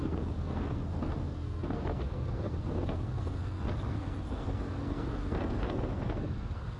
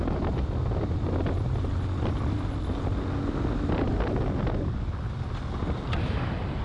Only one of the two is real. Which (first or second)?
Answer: second